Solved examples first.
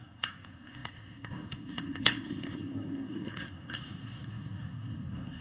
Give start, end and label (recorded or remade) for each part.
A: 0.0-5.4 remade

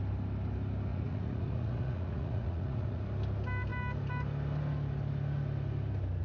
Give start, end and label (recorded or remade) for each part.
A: 0.0-0.9 recorded; 0.9-3.0 remade; 3.0-6.2 recorded

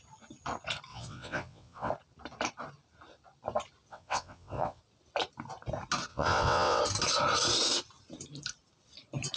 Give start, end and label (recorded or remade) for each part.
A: 0.0-0.9 recorded; 0.9-1.9 remade; 1.9-3.9 recorded; 3.9-4.8 remade; 4.8-6.1 recorded; 6.1-6.8 remade; 6.8-9.4 recorded

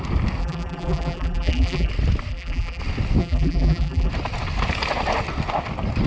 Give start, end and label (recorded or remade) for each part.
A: 0.0-0.4 recorded; 0.4-1.9 remade; 1.9-2.3 recorded; 2.3-2.8 remade; 2.8-3.2 recorded; 3.2-4.1 remade; 4.1-6.1 recorded